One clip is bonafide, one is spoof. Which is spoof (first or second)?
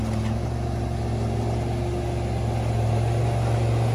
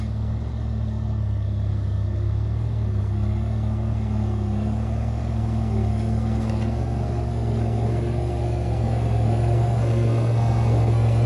second